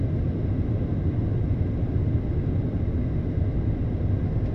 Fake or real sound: real